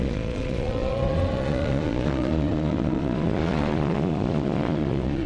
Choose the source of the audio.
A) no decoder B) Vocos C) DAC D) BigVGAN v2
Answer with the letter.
B